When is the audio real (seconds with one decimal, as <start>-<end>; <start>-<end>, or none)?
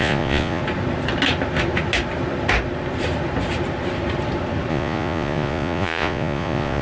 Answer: 0.6-4.7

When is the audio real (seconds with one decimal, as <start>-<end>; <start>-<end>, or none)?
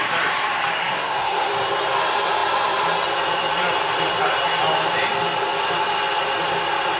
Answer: 0.0-0.8; 1.5-7.0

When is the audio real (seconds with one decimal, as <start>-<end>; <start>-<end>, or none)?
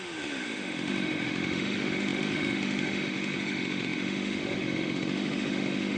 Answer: none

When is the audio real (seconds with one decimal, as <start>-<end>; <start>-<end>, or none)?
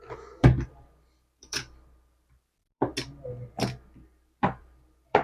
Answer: 2.9-3.6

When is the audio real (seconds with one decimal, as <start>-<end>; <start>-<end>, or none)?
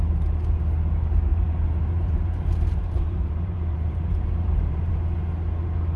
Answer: 0.0-1.3; 4.9-6.0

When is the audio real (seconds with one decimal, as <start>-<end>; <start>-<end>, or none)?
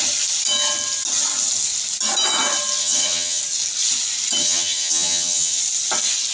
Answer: 0.0-2.8; 3.4-4.4; 5.6-6.3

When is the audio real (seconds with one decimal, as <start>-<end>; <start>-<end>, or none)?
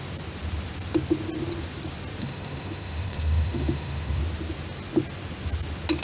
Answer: 0.0-2.2; 4.2-6.0